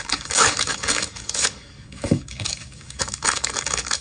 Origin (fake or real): fake